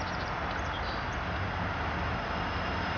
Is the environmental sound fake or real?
real